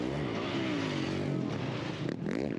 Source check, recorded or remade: recorded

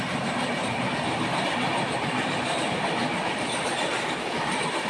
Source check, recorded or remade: remade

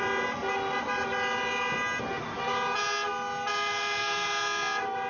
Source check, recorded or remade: recorded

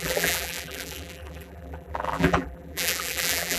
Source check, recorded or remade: remade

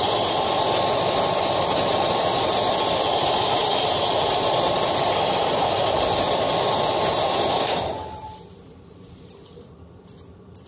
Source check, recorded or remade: remade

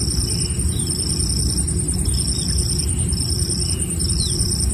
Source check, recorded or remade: remade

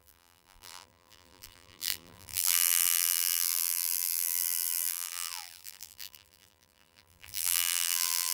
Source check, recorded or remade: remade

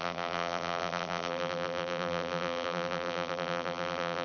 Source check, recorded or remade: remade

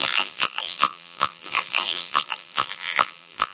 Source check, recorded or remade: remade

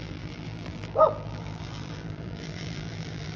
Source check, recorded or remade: remade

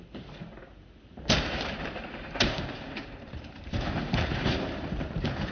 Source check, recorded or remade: remade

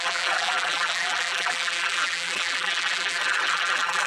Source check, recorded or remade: remade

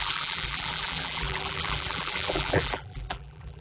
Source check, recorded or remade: remade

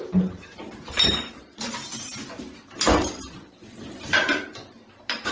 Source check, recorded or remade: remade